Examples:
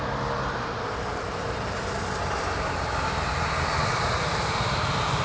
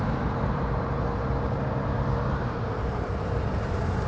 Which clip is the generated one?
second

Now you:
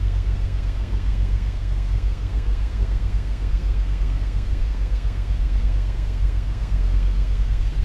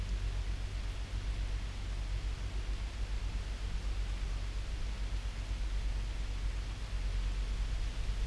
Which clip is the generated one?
first